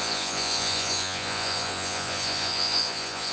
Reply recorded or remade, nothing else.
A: remade